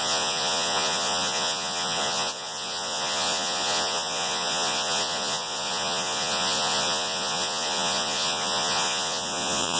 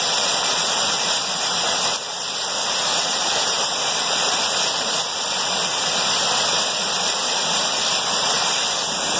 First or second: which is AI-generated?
first